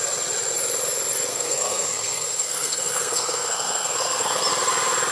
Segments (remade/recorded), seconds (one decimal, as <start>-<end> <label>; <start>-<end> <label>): 0.0-1.3 recorded; 1.3-4.4 remade; 4.4-5.1 recorded

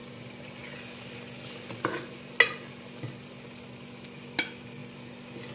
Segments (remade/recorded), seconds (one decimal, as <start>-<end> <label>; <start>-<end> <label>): 0.0-5.5 recorded

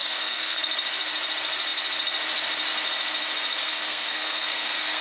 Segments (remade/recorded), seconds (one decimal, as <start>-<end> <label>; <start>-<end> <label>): 0.0-0.6 remade; 0.6-3.6 recorded; 3.6-5.0 remade

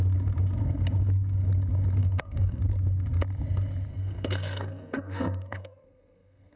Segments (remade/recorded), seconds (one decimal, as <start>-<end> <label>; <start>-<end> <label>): 0.0-2.0 recorded; 2.0-2.6 remade; 2.6-3.9 recorded; 3.9-6.6 remade

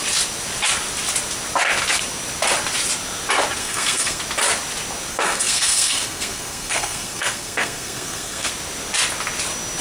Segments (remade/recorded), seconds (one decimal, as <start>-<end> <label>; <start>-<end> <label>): 0.0-3.6 recorded; 3.6-4.2 remade; 4.2-5.1 recorded; 5.1-8.5 remade; 8.5-9.8 recorded

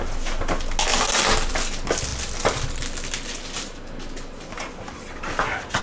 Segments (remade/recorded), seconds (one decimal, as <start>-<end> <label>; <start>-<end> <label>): 0.0-5.8 recorded

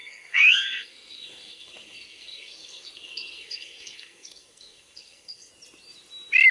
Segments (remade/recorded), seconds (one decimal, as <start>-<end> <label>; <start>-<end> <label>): 0.0-5.5 remade; 5.5-6.5 recorded